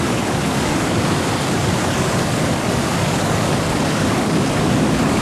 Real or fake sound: fake